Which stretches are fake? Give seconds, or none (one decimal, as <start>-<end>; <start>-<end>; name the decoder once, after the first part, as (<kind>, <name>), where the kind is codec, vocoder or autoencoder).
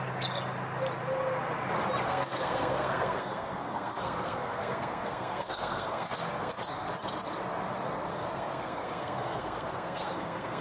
2.1-6.9 (codec, SNAC); 8.1-10.6